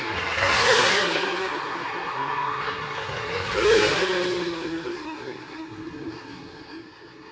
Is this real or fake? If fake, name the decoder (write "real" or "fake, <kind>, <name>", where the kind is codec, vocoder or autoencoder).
fake, codec, SNAC